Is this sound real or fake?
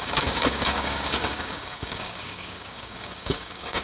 fake